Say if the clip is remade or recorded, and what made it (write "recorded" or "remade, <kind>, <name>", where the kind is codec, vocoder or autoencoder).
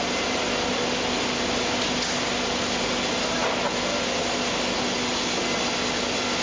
recorded